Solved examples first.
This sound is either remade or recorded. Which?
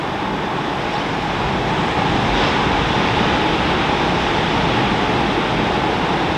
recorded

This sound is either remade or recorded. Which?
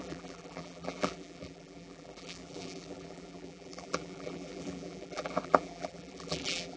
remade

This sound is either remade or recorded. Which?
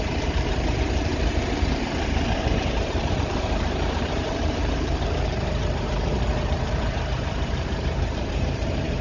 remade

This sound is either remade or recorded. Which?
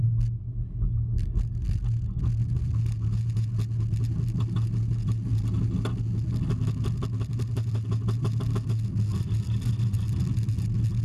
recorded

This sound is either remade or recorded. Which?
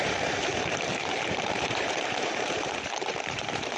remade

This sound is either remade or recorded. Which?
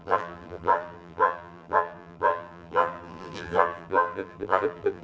remade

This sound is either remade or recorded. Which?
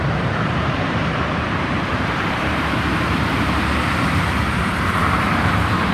remade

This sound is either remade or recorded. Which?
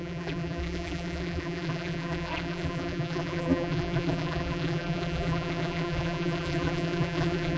remade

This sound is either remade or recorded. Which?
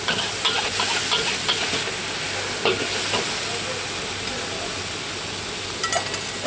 recorded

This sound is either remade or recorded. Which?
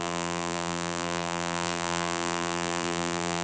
remade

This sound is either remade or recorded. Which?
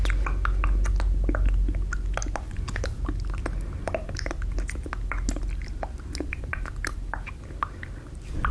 recorded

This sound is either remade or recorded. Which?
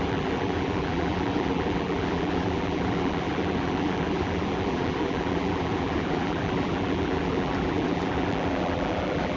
remade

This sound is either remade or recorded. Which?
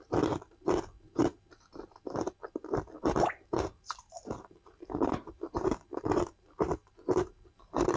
remade